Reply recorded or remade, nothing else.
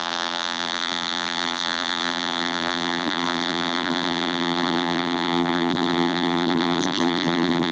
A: remade